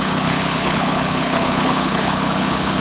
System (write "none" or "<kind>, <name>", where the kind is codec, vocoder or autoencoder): codec, HILCodec